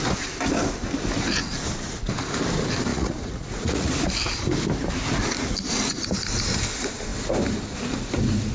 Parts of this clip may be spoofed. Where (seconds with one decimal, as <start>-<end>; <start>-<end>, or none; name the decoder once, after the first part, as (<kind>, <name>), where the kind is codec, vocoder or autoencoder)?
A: 2.9-3.9 (vocoder, Vocos)